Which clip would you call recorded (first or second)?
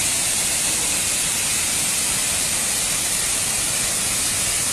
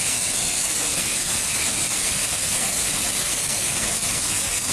first